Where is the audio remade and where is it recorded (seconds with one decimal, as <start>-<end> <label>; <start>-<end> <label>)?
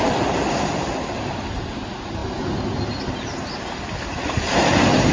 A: 0.0-5.1 recorded